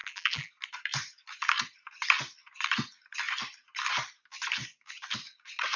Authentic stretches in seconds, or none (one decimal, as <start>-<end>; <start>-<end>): 0.5-5.8